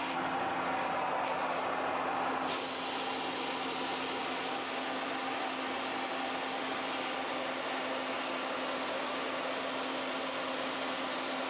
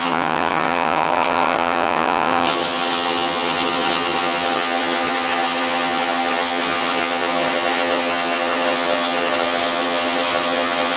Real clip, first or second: first